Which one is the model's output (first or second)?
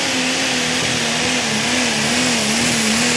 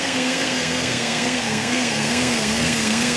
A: second